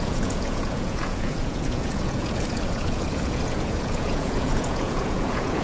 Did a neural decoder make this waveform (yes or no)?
yes